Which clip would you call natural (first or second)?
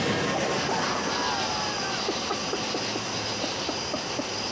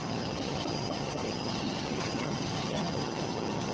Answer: first